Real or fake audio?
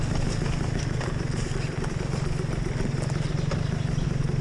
real